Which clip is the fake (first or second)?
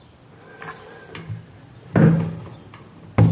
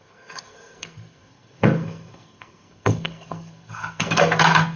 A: second